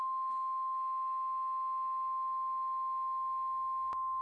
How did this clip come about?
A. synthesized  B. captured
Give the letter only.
B